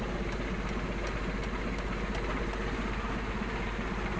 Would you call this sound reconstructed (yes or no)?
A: no